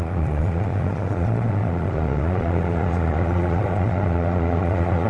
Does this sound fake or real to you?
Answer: fake